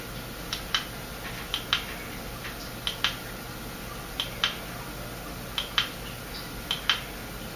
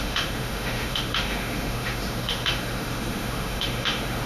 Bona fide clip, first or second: first